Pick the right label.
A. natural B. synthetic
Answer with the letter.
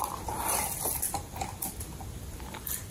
A